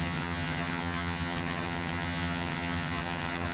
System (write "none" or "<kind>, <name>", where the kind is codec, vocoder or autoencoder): vocoder, HiFi-GAN